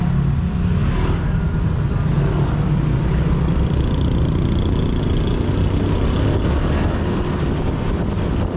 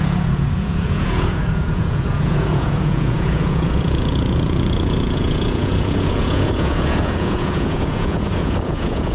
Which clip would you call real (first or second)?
first